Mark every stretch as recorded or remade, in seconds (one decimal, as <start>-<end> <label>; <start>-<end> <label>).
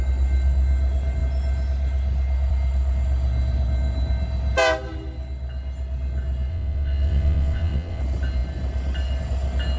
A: 0.0-6.5 recorded; 6.5-8.0 remade; 8.0-9.8 recorded